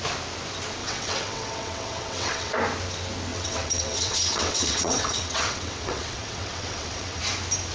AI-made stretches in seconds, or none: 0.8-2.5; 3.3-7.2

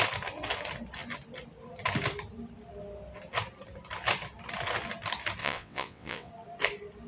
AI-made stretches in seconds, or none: 5.4-6.3

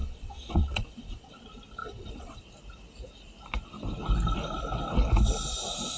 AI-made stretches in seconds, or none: 0.0-1.4; 1.8-2.4

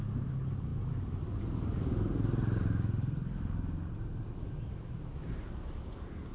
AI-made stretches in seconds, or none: none

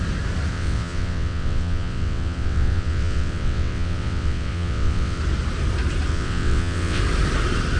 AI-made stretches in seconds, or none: 0.5-5.2; 6.1-7.0

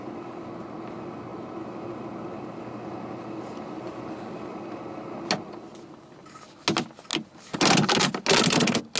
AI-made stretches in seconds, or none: none

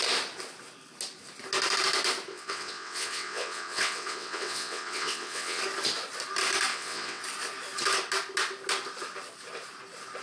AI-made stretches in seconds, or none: 2.3-5.6; 6.7-7.2

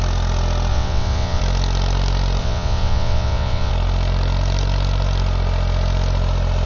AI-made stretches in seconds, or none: 0.7-1.4; 2.4-3.7